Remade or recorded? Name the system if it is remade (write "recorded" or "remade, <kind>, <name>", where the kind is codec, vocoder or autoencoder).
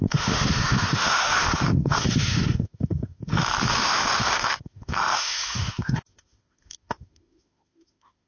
remade, autoencoder, DAC-VAE